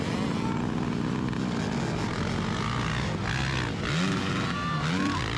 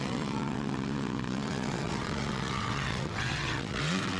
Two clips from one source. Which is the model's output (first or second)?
second